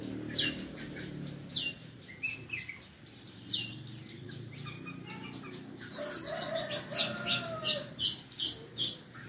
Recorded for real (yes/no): yes